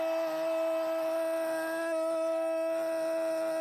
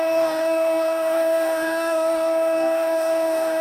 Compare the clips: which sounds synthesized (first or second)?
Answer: second